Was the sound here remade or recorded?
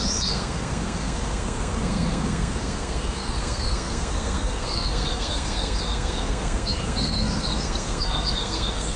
remade